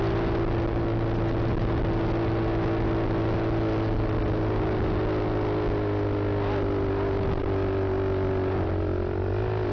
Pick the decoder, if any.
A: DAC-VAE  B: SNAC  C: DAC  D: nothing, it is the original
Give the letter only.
D